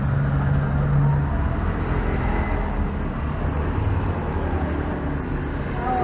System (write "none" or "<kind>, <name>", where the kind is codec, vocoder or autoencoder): none